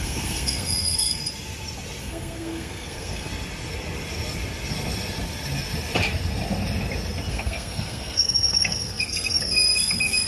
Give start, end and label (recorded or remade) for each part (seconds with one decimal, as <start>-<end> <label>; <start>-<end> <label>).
0.0-1.2 remade; 1.2-2.0 recorded; 2.0-3.3 remade; 3.3-7.3 recorded; 7.3-10.3 remade